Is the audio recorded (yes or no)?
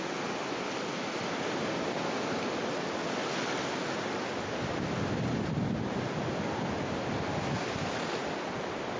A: yes